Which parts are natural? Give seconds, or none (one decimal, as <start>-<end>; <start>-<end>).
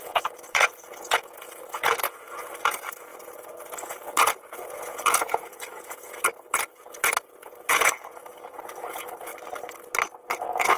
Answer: 9.3-10.4